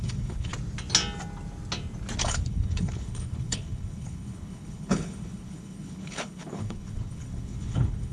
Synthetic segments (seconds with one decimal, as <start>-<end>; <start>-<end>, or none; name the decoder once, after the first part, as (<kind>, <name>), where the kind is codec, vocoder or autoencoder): 0.0-0.5 (codec, HILCodec); 2.2-8.1